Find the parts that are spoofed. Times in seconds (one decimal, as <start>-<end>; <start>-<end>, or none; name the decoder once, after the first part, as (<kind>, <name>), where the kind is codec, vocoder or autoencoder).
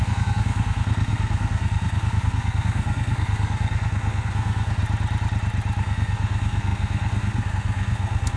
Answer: 0.0-4.8 (codec, SNAC); 5.8-8.4